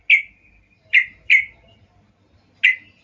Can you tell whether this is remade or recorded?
recorded